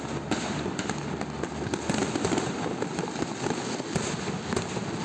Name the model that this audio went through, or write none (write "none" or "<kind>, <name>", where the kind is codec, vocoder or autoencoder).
none